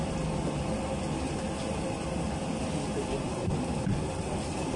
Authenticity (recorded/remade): recorded